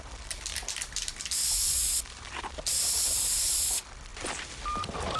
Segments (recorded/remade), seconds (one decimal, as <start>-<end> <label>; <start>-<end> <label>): 0.0-2.7 recorded; 2.7-3.5 remade; 3.5-5.2 recorded